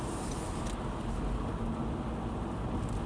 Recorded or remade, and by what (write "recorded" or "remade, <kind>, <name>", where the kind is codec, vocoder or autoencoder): recorded